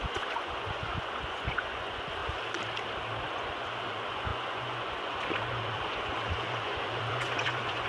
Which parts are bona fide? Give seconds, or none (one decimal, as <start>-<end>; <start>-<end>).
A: 2.2-3.2